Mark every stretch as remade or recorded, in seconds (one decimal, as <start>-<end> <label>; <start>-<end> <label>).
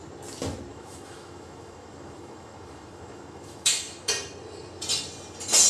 0.0-0.7 recorded; 0.7-4.1 remade; 4.1-5.7 recorded